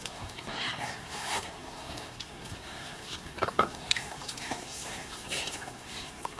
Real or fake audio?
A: fake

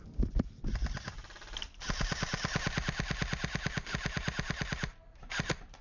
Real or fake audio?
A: real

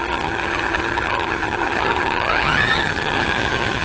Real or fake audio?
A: fake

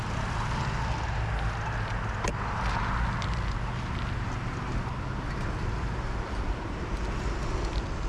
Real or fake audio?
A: real